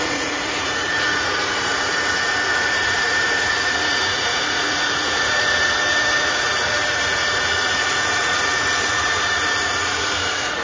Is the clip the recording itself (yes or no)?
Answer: no